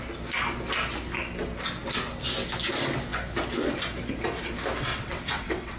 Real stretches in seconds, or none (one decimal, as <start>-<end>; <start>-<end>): 0.0-4.9